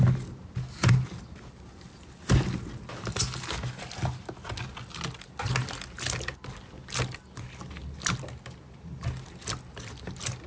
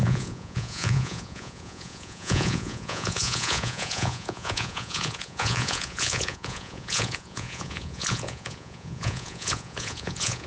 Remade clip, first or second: second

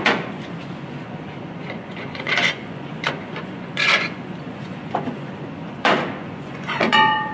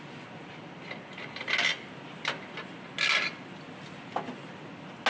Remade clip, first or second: first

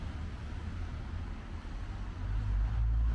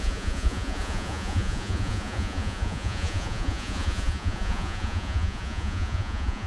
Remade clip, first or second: second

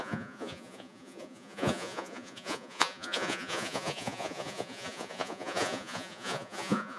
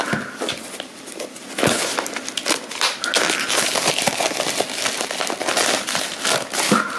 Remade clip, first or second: first